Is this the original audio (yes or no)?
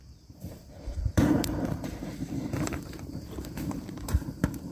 no